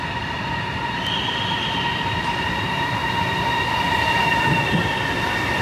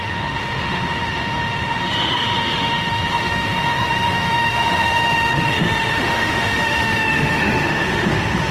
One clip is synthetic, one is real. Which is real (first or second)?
first